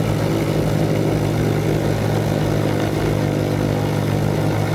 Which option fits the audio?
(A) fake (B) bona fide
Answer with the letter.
B